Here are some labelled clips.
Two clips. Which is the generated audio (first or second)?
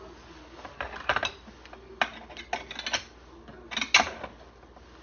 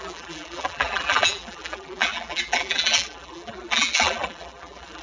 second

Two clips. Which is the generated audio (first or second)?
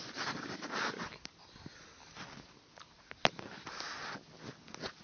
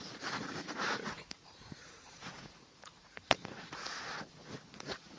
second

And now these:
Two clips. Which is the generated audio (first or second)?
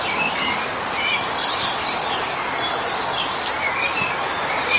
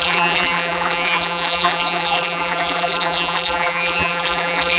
second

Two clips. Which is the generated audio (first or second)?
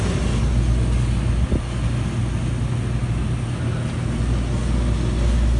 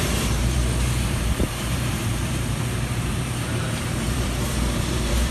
second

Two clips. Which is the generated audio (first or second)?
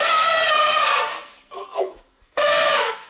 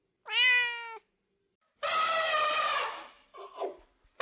first